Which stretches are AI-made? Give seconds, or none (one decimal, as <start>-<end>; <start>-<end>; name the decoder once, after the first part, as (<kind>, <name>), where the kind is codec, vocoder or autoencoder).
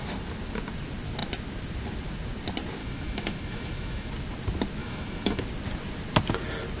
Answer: 2.8-4.1 (autoencoder, DAC-VAE); 4.8-5.4